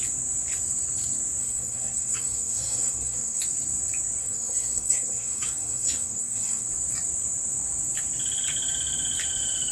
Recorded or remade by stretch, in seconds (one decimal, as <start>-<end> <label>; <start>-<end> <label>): 0.0-1.4 recorded; 1.4-3.4 remade; 3.4-4.2 recorded; 4.2-6.7 remade; 6.7-9.7 recorded